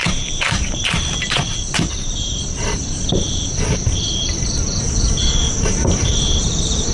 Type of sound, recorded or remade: remade